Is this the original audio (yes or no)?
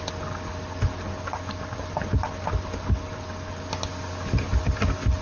yes